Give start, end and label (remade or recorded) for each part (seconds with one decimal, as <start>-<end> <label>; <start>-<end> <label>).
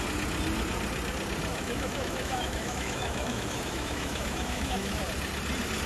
0.0-1.5 recorded; 1.5-5.0 remade; 5.0-5.9 recorded